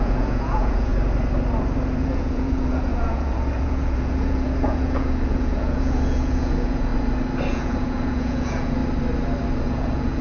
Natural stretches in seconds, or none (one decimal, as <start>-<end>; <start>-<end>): 0.9-2.0; 6.9-7.5; 8.8-9.6